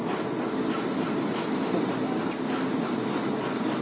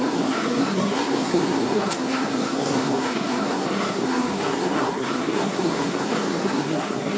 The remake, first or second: second